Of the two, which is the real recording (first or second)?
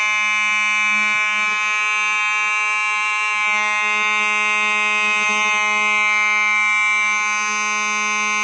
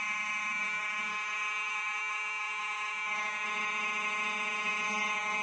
first